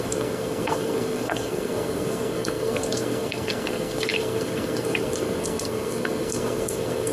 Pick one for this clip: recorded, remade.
remade